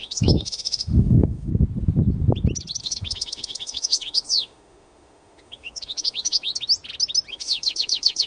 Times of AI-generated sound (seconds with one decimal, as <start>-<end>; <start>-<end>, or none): 0.0-1.5; 2.8-6.5; 7.3-8.3